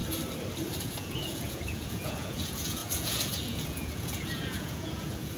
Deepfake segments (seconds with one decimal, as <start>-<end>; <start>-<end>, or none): 0.8-5.4